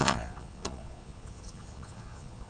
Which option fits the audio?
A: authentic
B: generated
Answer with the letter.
B